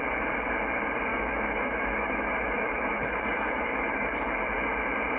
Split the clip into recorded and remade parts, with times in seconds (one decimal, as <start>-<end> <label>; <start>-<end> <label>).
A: 0.0-1.1 recorded; 1.1-4.2 remade; 4.2-5.2 recorded

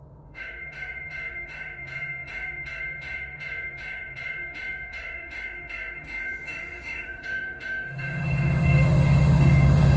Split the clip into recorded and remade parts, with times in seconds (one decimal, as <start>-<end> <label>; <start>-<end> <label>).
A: 0.0-10.0 remade

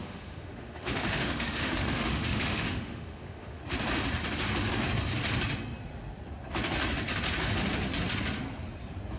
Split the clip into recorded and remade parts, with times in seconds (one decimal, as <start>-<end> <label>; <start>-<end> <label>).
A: 0.0-3.6 remade; 3.6-9.2 recorded

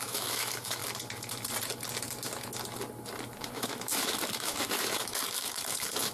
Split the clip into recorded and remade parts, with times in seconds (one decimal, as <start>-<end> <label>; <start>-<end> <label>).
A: 0.0-0.8 remade; 0.8-3.4 recorded; 3.4-6.1 remade

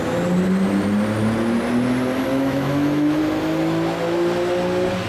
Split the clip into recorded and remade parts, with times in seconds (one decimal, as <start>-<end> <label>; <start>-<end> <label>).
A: 0.0-2.3 recorded; 2.3-3.2 remade; 3.2-5.1 recorded

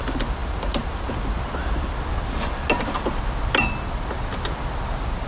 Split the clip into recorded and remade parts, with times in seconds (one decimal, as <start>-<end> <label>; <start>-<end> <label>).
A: 0.0-5.3 recorded